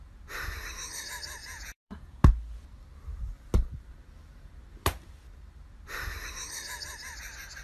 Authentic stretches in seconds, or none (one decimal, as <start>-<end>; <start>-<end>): 0.0-1.4; 2.2-7.6